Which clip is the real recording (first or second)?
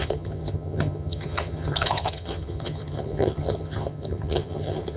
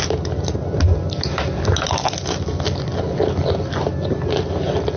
second